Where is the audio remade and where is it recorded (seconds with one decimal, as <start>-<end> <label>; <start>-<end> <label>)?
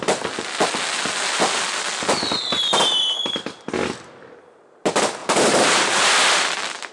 0.0-5.2 recorded; 5.2-5.9 remade; 5.9-6.9 recorded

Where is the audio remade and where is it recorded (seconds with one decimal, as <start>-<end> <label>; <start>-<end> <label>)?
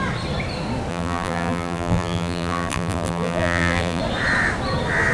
0.0-0.9 recorded; 0.9-4.0 remade; 4.0-5.1 recorded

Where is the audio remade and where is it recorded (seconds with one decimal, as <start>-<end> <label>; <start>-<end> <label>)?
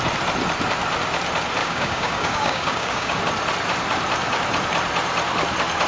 0.0-1.6 recorded; 1.6-3.2 remade; 3.2-5.9 recorded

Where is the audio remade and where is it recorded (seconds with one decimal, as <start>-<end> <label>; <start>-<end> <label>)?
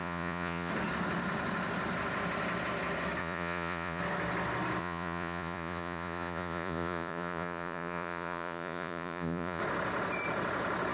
0.0-0.7 remade; 0.7-3.2 recorded; 3.2-4.0 remade; 4.0-4.8 recorded; 4.8-9.6 remade; 9.6-10.9 recorded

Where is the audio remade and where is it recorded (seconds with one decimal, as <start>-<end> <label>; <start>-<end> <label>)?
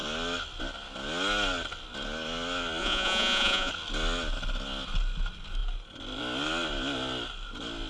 0.0-2.8 recorded; 2.8-3.7 remade; 3.7-7.9 recorded